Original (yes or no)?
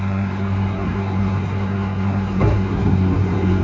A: no